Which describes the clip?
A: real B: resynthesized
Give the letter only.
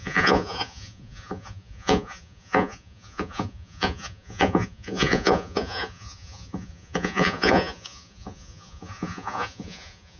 B